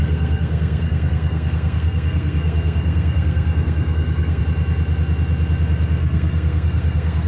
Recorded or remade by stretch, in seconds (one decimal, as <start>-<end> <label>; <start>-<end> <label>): 0.0-4.4 remade; 4.4-6.0 recorded; 6.0-7.3 remade